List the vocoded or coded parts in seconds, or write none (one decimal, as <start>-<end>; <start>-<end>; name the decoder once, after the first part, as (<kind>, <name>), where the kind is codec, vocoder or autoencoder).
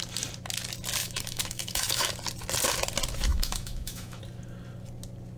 1.0-2.1 (autoencoder, DAC-VAE); 3.3-4.2